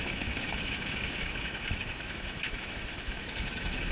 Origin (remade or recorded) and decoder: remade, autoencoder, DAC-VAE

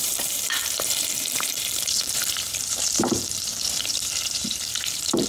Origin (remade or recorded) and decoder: remade, vocoder, BigVGAN v2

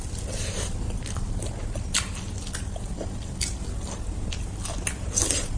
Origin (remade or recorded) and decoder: recorded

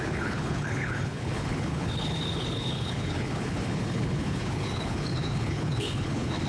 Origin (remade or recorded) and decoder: remade, codec, HILCodec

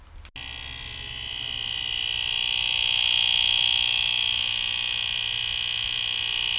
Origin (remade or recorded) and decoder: recorded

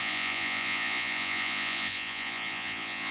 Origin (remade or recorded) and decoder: remade, vocoder, Vocos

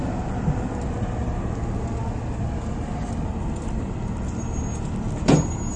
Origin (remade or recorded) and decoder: recorded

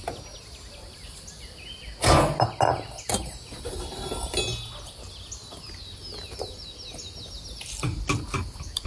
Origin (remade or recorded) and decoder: recorded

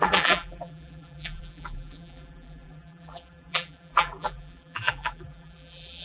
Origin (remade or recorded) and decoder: remade, vocoder, BigVGAN v2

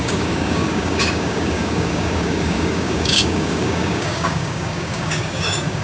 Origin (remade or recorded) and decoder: remade, codec, DAC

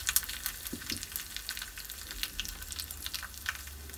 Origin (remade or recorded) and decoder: recorded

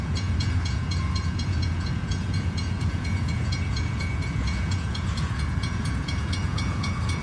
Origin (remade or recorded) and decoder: remade, vocoder, Vocos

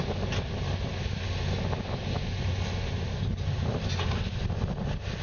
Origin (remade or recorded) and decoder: recorded